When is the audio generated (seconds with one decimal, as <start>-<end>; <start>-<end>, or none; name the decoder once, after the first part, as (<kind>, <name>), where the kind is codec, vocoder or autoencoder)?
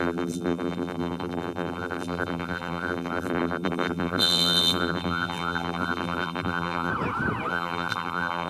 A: 0.0-6.9 (vocoder, BigVGAN v2); 7.5-8.5